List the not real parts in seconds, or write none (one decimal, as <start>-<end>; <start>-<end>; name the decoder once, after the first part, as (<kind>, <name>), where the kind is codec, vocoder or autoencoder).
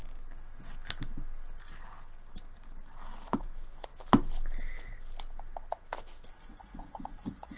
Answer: 3.4-3.9 (vocoder, Vocos); 6.3-7.6